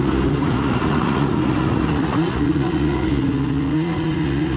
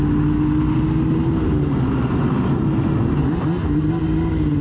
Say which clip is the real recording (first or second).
second